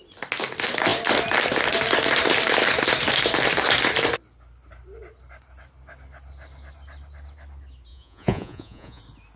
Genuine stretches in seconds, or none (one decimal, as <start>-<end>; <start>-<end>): 0.0-7.9; 9.0-9.4